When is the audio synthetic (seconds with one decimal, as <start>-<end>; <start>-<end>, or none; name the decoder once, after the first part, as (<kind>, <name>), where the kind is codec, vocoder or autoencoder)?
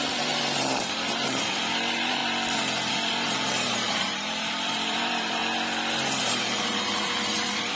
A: 0.0-2.2 (vocoder, BigVGAN v2); 2.9-5.4; 6.2-7.8